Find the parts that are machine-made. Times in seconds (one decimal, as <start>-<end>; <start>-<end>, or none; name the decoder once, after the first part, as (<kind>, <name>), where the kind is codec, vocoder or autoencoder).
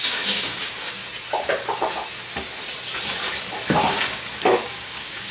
0.0-1.0 (codec, DAC); 3.9-5.3